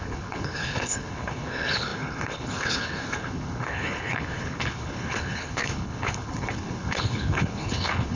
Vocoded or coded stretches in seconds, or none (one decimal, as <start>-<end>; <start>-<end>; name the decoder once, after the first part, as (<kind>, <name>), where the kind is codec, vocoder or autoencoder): 0.0-8.2 (codec, HILCodec)